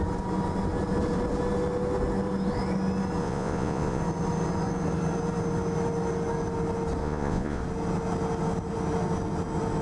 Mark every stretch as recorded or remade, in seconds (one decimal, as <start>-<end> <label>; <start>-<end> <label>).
0.0-3.2 recorded; 3.2-4.0 remade; 4.0-7.0 recorded; 7.0-7.6 remade; 7.6-9.8 recorded